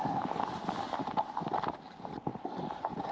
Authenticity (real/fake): real